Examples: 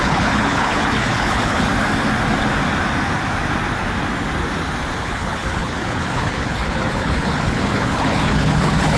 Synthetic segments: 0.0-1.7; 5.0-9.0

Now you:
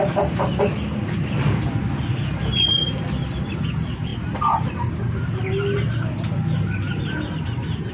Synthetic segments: none

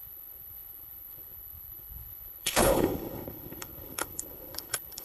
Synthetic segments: 0.0-5.0